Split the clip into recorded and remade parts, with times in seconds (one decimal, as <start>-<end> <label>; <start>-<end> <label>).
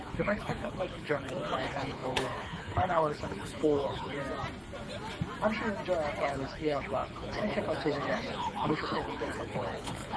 0.0-4.2 remade; 4.2-6.2 recorded; 6.2-10.2 remade